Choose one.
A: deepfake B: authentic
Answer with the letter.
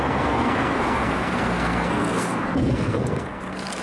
A